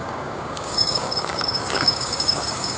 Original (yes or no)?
no